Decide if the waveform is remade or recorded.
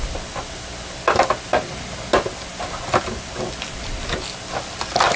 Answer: recorded